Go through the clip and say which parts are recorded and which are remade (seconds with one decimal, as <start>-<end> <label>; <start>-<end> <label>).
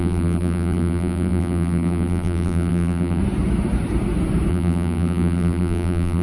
0.0-3.2 remade; 3.2-4.5 recorded; 4.5-6.2 remade